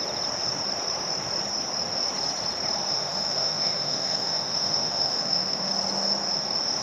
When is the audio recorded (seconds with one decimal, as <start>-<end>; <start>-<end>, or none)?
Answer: 0.0-2.9; 5.7-6.8